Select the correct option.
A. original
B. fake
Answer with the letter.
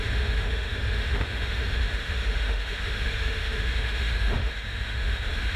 B